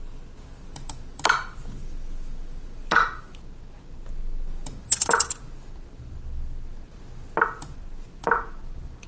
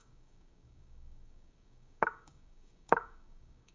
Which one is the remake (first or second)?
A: second